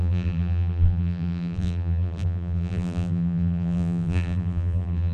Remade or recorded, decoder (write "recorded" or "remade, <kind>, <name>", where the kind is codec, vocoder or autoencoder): remade, vocoder, BigVGAN v2